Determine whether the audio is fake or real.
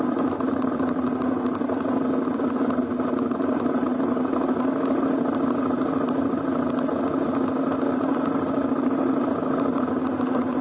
real